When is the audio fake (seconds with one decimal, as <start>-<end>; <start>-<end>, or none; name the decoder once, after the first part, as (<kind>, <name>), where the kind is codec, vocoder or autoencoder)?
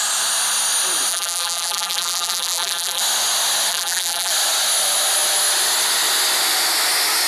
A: 1.1-3.0 (vocoder, BigVGAN v2); 3.7-4.3